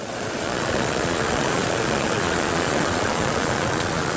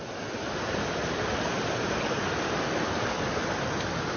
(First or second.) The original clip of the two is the second